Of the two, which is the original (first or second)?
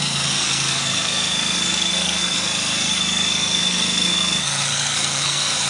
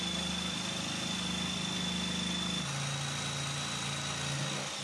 second